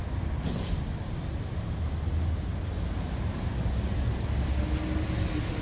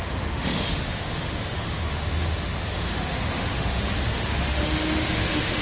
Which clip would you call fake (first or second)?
second